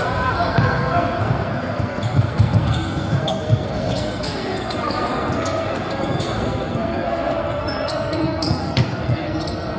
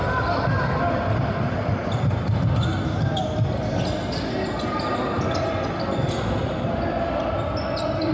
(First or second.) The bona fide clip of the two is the second